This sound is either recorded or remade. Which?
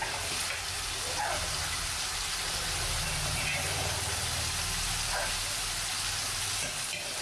recorded